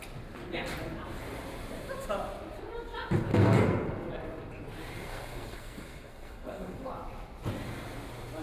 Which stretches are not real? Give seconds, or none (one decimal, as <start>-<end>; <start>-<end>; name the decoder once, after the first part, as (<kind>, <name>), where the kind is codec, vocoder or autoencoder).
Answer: 3.3-3.9 (codec, SNAC); 5.0-6.9